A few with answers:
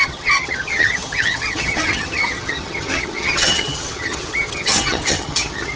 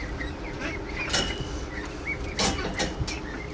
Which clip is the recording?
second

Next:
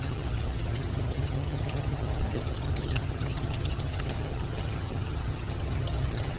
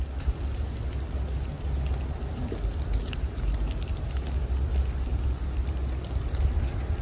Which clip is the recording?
second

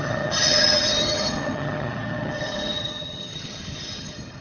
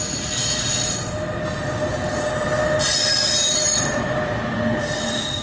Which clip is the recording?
second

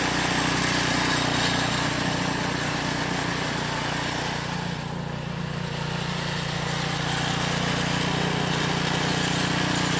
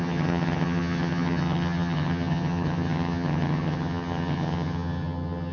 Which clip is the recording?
first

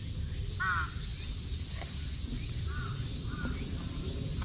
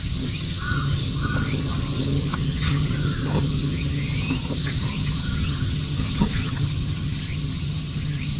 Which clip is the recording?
first